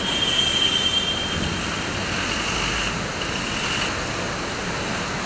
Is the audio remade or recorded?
recorded